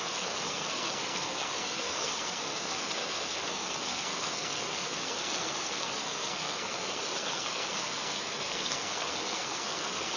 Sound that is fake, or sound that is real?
fake